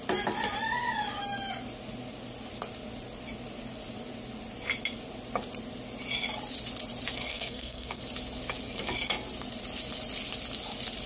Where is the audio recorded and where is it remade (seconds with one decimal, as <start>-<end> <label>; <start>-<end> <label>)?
0.0-7.3 recorded; 7.3-8.0 remade; 8.0-11.1 recorded